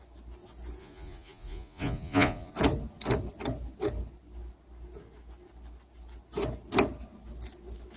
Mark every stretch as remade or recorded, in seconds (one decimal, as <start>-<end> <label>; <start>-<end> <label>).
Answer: 0.0-0.8 recorded; 0.8-2.5 remade; 2.5-8.0 recorded